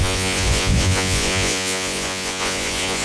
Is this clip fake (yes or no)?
yes